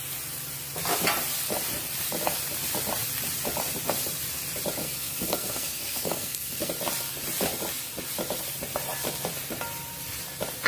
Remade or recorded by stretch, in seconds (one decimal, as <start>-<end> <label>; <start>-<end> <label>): 0.0-4.8 recorded; 4.8-6.7 remade; 6.7-10.7 recorded